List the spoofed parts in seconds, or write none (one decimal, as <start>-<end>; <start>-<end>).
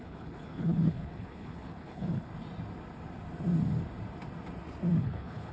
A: 0.0-2.3; 5.0-5.5